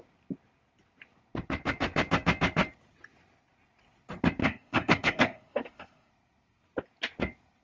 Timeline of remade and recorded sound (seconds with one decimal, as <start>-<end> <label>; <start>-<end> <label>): 0.0-4.4 recorded; 4.4-6.1 remade; 6.1-7.6 recorded